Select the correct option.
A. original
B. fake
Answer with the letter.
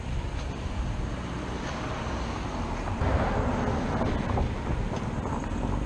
A